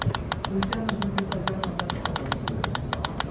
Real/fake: real